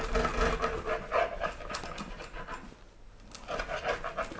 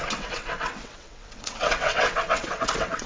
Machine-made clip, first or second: second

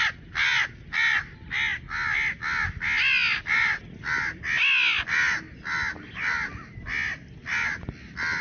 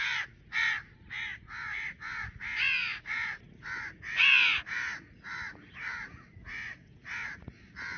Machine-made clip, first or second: second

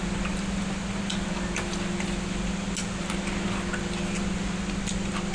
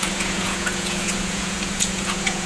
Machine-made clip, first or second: second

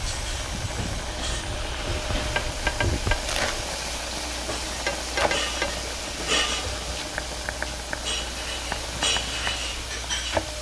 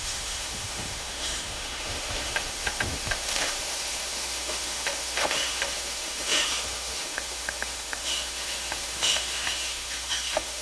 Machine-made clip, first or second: second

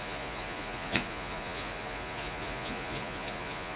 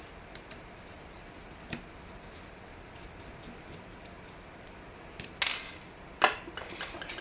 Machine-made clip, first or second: first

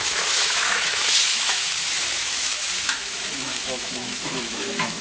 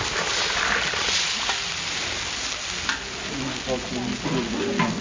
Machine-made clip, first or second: first